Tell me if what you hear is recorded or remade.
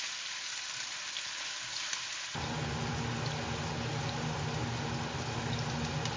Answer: recorded